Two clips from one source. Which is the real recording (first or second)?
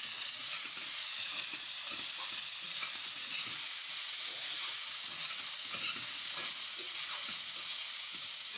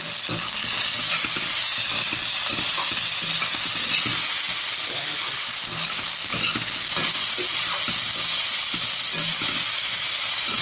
second